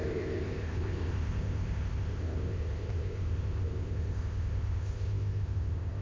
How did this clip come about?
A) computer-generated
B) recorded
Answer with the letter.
A